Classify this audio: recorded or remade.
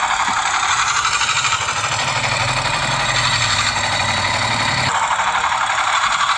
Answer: remade